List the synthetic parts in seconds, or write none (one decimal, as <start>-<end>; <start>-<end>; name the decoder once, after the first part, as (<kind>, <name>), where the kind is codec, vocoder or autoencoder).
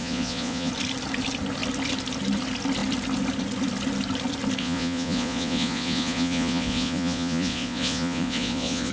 0.0-0.7 (vocoder, Vocos); 4.6-8.9